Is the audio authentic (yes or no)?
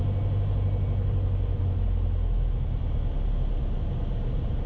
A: yes